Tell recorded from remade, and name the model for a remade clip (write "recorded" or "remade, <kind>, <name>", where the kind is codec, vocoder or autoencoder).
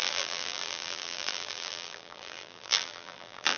remade, vocoder, BigVGAN v2